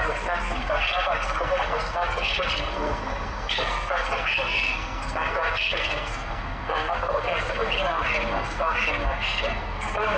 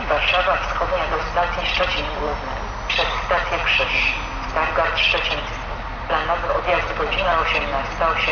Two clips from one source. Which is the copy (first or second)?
first